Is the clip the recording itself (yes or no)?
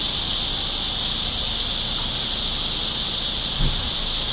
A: yes